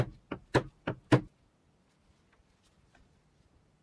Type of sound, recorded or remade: recorded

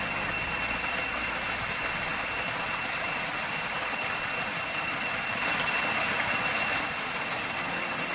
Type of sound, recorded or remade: remade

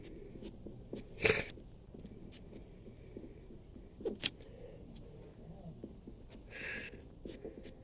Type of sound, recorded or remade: recorded